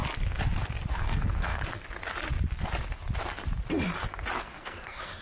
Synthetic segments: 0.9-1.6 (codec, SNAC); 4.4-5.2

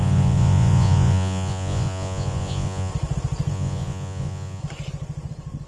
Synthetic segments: 0.0-2.9 (vocoder, Vocos); 3.5-4.6

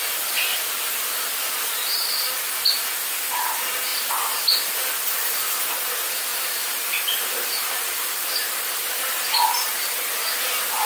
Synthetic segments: 6.3-9.0 (vocoder, BigVGAN v2)